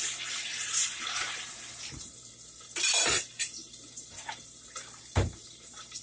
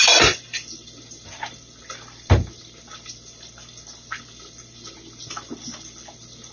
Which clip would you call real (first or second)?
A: second